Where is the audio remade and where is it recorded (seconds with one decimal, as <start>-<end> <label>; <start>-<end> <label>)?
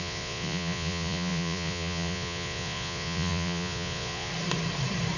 0.0-4.3 remade; 4.3-5.2 recorded